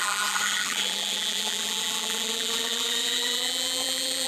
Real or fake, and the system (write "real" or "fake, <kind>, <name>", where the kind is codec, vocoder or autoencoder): fake, vocoder, BigVGAN v2